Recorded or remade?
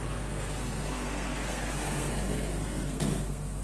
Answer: remade